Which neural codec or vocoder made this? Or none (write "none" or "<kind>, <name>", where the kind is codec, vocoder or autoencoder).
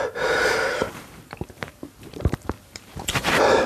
vocoder, BigVGAN v2